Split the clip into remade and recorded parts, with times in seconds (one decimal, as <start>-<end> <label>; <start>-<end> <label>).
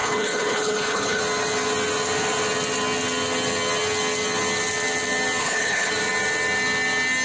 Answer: 0.0-1.2 remade; 1.2-5.4 recorded; 5.4-5.9 remade; 5.9-7.2 recorded